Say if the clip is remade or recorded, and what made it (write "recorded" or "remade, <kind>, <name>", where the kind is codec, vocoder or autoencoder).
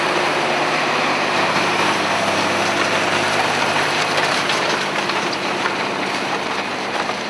remade, vocoder, BigVGAN v2